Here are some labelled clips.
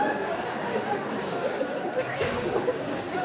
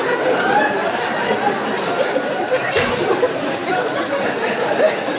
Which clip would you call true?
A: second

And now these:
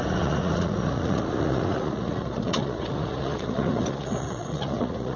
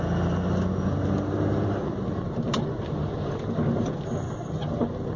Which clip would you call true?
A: second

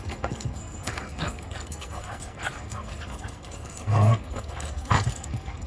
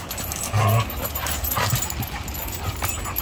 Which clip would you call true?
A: second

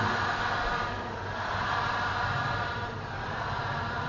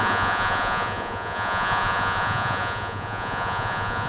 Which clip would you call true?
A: first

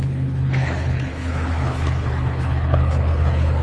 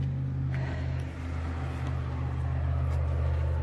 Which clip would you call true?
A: second